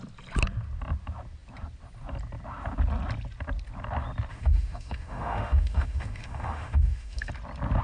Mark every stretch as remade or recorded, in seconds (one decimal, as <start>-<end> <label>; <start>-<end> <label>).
0.0-4.3 recorded; 4.3-7.3 remade; 7.3-7.8 recorded

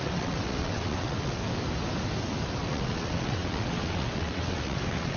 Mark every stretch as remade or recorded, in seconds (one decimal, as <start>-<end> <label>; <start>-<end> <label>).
0.0-1.4 remade; 1.4-2.6 recorded; 2.6-5.2 remade